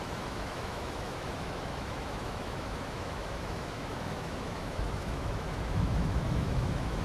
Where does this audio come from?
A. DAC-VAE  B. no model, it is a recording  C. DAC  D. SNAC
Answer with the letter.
A